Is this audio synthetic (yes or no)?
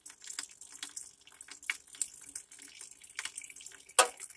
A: no